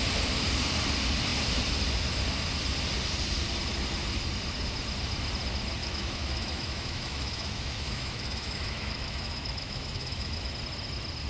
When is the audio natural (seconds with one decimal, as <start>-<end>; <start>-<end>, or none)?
0.0-5.8; 10.5-11.3